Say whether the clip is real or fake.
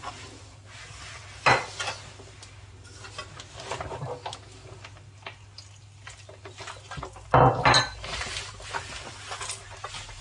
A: real